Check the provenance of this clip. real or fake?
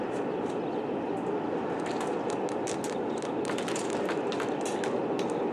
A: real